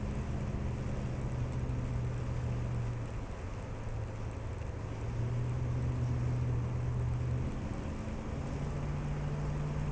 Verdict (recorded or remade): recorded